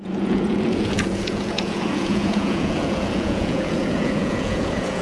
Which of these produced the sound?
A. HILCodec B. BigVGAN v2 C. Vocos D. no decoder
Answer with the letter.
C